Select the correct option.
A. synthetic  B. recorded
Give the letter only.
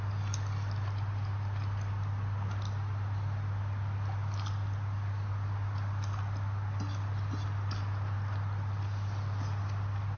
B